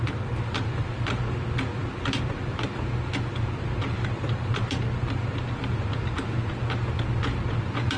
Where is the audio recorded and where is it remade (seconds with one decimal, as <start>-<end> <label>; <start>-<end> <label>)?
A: 0.0-8.0 recorded